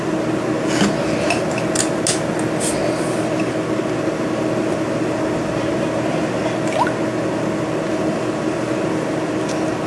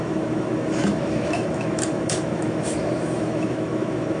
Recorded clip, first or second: first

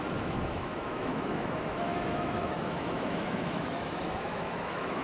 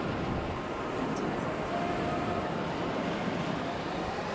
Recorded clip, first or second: second